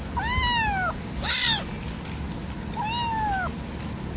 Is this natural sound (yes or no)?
yes